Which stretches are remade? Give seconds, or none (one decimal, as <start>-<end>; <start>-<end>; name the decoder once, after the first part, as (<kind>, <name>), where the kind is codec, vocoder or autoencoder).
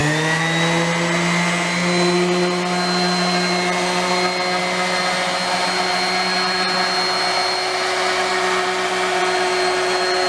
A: none